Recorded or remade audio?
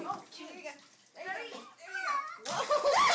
recorded